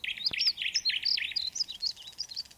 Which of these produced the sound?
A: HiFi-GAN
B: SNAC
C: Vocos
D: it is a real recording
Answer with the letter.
D